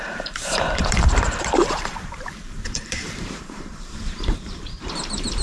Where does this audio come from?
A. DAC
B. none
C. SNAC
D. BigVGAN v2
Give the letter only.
D